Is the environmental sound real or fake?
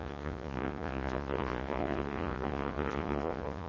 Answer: fake